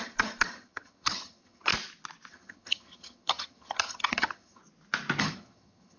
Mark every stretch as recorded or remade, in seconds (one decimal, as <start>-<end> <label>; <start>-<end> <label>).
0.0-1.7 remade; 1.7-2.3 recorded; 2.3-4.6 remade; 4.6-5.2 recorded; 5.2-6.0 remade